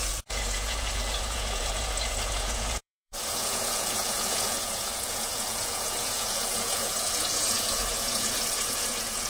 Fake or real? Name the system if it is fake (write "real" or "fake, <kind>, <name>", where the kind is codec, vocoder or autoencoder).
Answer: fake, vocoder, Vocos